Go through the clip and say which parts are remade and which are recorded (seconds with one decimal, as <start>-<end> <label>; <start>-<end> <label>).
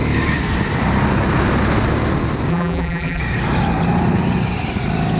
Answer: 0.0-2.5 recorded; 2.5-3.2 remade; 3.2-5.2 recorded